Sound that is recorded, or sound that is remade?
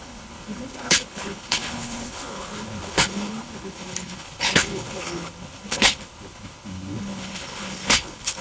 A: remade